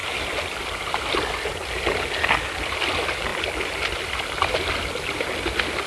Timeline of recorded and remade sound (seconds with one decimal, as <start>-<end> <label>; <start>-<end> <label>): 0.0-5.9 recorded